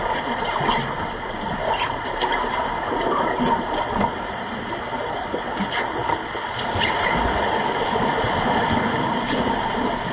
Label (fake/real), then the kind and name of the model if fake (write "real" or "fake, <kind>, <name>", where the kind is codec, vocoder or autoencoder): real